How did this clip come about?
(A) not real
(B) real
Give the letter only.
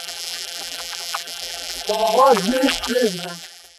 A